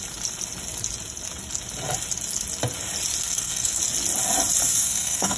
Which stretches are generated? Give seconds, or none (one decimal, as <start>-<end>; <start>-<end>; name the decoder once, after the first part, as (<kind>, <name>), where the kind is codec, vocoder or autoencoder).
3.2-3.8 (codec, SNAC); 4.6-5.4